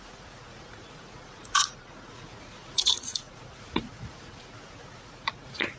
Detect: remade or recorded remade